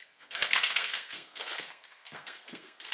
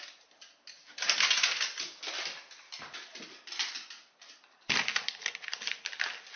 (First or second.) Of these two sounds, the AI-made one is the first